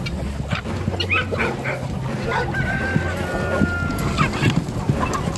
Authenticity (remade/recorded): recorded